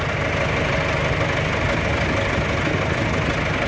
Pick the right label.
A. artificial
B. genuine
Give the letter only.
B